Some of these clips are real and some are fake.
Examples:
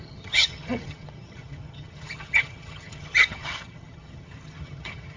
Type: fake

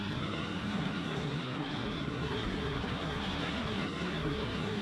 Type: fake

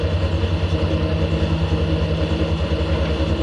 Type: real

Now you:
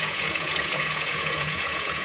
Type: fake